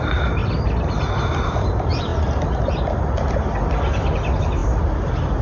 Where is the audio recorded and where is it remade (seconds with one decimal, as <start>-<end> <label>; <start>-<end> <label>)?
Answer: 0.0-5.4 recorded